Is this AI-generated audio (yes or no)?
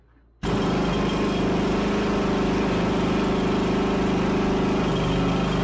no